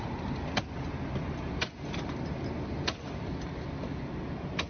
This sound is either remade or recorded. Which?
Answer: recorded